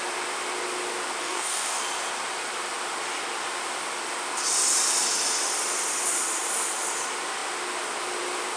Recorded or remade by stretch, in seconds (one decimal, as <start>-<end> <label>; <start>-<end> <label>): 0.0-1.2 recorded; 1.2-1.8 remade; 1.8-8.6 recorded